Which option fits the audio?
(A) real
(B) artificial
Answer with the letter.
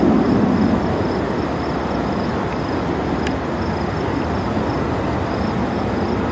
A